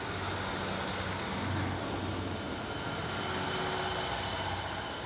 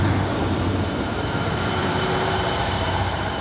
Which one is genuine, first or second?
first